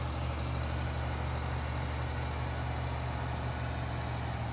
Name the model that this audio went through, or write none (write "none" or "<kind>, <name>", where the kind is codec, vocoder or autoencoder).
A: none